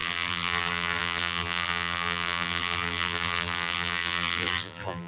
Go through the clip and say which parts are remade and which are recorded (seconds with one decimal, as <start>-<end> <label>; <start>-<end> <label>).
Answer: 0.0-5.1 remade